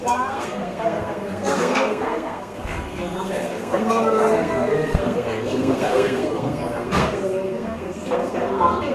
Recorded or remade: remade